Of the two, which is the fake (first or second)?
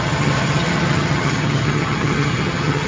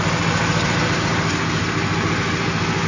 first